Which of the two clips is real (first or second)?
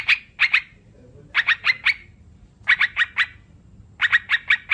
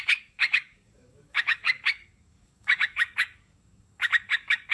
first